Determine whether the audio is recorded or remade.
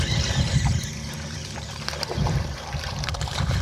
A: remade